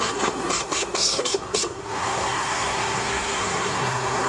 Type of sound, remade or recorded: remade